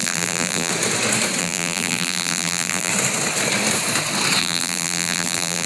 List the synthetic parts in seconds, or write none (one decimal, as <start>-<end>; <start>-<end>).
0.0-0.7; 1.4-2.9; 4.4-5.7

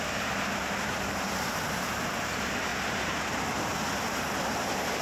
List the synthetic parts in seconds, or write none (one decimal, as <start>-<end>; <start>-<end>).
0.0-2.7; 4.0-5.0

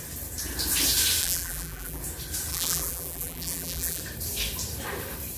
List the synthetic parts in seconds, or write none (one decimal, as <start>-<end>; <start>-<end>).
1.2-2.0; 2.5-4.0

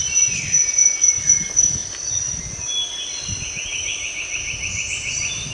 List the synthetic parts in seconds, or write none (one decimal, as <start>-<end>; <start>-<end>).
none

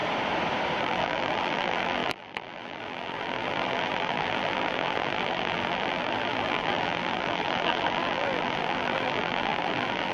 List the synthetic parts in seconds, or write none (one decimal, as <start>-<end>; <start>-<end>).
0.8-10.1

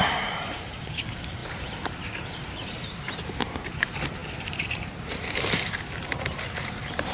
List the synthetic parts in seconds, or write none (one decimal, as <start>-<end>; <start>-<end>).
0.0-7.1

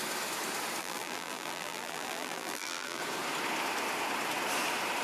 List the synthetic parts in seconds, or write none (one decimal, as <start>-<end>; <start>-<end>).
0.8-3.0

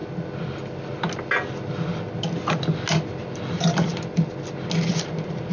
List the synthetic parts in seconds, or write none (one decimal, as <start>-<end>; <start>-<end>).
3.3-3.9; 4.9-5.5